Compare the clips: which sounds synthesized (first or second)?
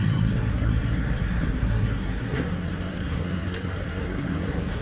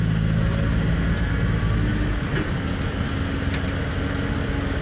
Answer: first